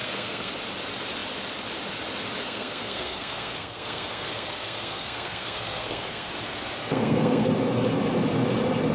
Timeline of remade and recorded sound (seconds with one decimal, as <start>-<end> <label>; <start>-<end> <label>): 0.0-0.5 remade; 0.5-2.4 recorded; 2.4-6.3 remade; 6.3-6.8 recorded; 6.8-7.5 remade; 7.5-8.9 recorded